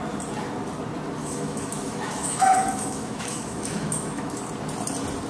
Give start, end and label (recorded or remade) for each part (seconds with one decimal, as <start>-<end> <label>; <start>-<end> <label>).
0.0-1.2 recorded; 1.2-4.4 remade; 4.4-5.3 recorded